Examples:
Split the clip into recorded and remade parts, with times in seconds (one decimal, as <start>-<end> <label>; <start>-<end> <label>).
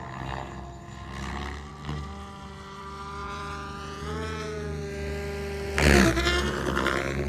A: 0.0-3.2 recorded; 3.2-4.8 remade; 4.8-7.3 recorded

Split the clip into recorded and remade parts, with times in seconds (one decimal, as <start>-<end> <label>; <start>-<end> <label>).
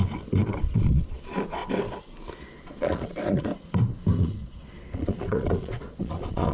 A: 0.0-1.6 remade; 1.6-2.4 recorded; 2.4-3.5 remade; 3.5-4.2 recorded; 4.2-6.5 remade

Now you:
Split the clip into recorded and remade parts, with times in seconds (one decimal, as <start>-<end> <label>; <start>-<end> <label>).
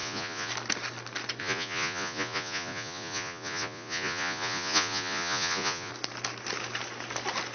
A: 0.0-0.5 remade; 0.5-1.4 recorded; 1.4-5.9 remade; 5.9-7.5 recorded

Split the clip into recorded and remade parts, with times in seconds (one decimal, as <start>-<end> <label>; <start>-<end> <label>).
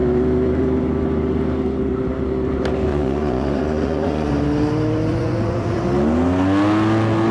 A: 0.0-2.9 recorded; 2.9-4.3 remade; 4.3-5.1 recorded; 5.1-5.8 remade; 5.8-7.3 recorded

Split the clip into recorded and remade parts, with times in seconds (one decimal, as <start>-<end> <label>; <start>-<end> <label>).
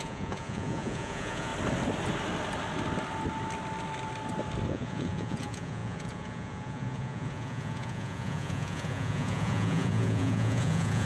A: 0.0-1.5 remade; 1.5-4.7 recorded; 4.7-11.1 remade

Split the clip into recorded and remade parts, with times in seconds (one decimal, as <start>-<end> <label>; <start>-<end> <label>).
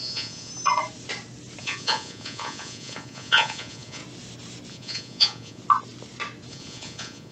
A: 0.0-0.5 remade; 0.5-1.6 recorded; 1.6-4.0 remade; 4.0-4.7 recorded; 4.7-5.6 remade; 5.6-6.5 recorded; 6.5-7.3 remade